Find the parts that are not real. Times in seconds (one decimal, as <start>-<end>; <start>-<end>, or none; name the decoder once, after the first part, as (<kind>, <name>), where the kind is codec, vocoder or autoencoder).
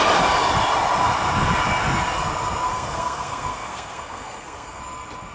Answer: 2.7-4.8 (codec, SNAC)